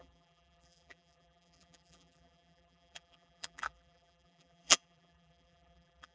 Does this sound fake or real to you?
fake